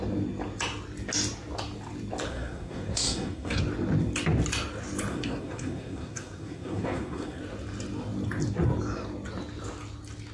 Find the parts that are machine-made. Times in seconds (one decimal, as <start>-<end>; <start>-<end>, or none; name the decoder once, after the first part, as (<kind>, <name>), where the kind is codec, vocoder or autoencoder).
2.3-3.6 (codec, SNAC); 5.1-7.4